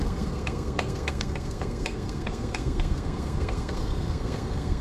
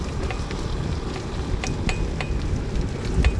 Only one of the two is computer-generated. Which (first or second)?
first